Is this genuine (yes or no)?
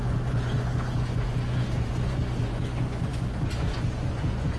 no